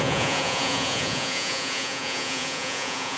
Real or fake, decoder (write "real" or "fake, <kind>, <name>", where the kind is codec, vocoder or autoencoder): fake, vocoder, Vocos